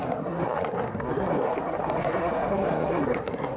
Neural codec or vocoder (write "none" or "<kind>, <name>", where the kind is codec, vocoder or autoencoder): codec, SNAC